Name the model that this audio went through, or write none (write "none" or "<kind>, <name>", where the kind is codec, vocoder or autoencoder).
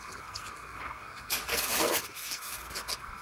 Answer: codec, SNAC